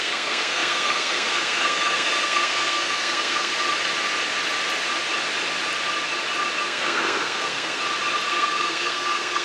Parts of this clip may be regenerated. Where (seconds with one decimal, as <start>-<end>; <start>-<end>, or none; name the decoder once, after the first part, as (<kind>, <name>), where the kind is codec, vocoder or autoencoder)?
0.0-3.5 (codec, SNAC); 6.6-7.8; 8.3-9.4